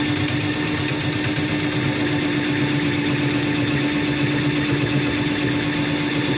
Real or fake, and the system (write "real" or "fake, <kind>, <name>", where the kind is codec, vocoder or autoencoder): real